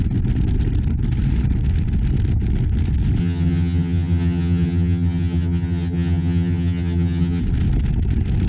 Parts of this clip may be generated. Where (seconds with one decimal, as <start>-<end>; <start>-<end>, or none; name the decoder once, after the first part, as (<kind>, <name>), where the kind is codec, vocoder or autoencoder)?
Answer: 3.2-7.4 (vocoder, HiFi-GAN)